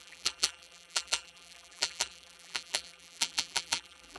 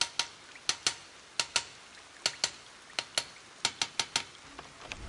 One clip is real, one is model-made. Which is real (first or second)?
second